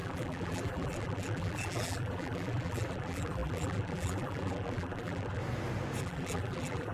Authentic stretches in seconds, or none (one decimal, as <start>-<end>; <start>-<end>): 5.4-6.0